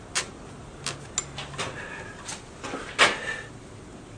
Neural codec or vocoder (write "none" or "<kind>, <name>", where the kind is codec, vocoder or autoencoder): none